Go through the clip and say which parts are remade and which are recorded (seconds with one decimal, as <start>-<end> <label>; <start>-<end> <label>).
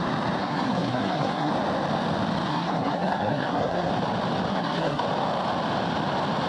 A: 0.0-0.4 recorded; 0.4-1.5 remade; 1.5-2.5 recorded; 2.5-3.9 remade; 3.9-4.5 recorded; 4.5-5.0 remade; 5.0-6.5 recorded